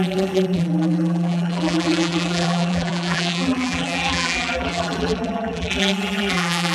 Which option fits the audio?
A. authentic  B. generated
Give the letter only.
B